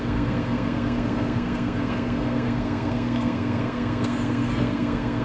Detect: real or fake fake